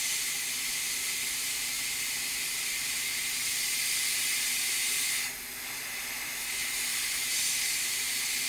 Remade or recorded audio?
recorded